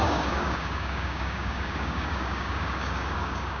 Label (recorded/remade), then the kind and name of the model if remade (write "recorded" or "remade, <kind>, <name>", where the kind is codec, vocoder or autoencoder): remade, codec, DAC